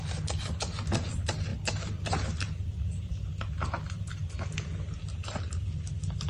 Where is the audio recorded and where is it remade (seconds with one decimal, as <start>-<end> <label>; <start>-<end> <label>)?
0.0-6.3 recorded